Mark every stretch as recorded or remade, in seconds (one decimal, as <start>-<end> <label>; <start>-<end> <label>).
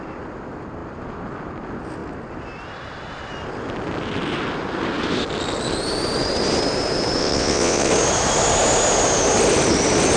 0.0-7.2 recorded; 7.2-7.9 remade; 7.9-10.2 recorded